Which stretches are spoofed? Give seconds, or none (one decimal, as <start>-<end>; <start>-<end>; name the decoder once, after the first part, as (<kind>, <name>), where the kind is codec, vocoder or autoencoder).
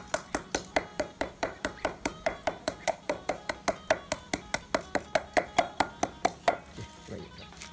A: 0.9-3.5 (vocoder, BigVGAN v2)